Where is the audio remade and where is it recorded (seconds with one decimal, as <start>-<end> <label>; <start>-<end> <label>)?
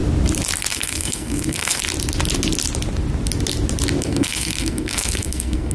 0.0-0.7 recorded; 0.7-1.8 remade; 1.8-4.0 recorded; 4.0-5.7 remade